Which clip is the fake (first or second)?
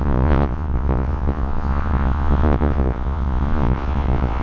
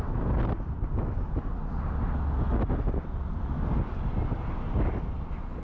first